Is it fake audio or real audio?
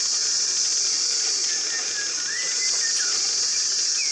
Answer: real